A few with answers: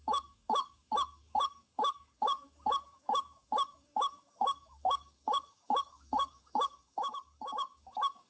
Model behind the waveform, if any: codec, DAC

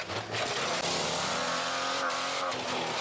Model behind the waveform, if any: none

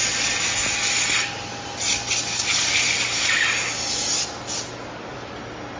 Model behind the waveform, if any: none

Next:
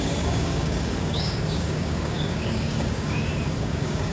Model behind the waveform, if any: codec, DAC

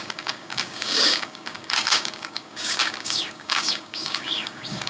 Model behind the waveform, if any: codec, DAC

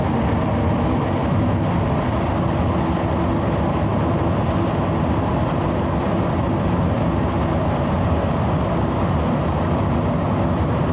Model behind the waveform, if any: none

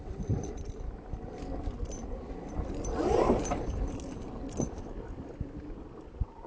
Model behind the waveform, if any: none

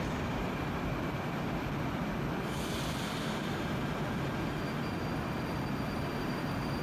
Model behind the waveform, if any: none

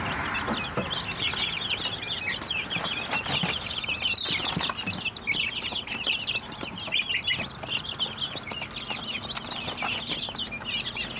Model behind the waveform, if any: none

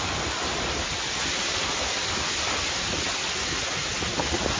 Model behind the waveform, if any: none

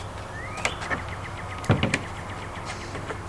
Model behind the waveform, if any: none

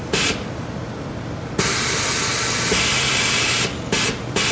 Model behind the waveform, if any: none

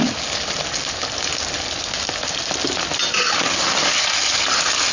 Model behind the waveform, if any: none